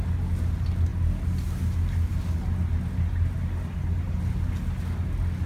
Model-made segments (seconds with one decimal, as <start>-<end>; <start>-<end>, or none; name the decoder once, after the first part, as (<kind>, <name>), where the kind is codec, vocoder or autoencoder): none